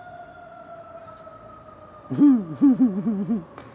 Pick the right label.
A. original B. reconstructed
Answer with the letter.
A